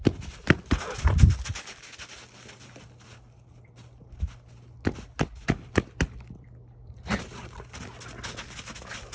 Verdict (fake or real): real